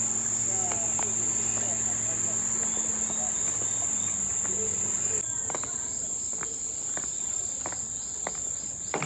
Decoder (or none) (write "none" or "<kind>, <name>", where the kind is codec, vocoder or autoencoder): none